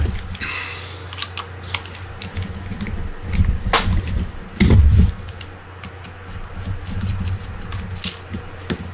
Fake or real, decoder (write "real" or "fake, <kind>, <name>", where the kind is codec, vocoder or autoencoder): real